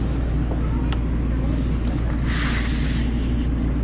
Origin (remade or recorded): recorded